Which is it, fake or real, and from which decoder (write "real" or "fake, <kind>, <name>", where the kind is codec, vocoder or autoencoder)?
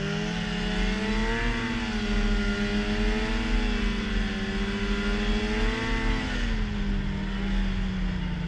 real